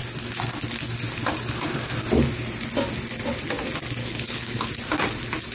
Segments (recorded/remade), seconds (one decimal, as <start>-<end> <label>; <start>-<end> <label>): 0.0-4.0 recorded; 4.0-4.7 remade; 4.7-5.5 recorded